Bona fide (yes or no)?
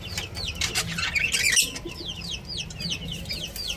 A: yes